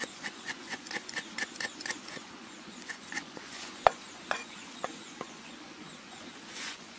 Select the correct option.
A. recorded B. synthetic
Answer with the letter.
B